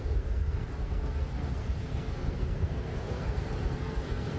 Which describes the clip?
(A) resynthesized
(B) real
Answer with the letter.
A